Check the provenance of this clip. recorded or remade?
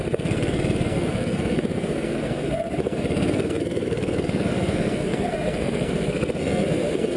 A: remade